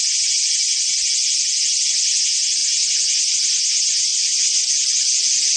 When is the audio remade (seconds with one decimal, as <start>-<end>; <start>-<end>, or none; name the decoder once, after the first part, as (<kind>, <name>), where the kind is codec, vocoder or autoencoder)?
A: 4.1-4.6 (vocoder, WaveNeXt)